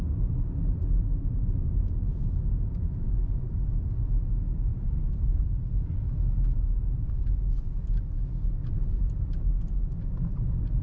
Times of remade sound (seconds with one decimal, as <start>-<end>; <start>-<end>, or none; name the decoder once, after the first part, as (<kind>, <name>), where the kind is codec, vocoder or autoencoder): 4.7-5.4 (vocoder, BigVGAN v2); 8.6-9.4